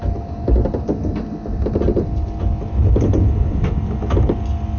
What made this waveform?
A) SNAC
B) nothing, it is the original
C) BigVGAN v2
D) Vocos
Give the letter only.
B